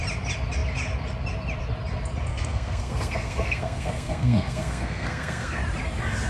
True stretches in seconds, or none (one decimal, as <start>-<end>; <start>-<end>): 0.0-2.3; 5.6-6.3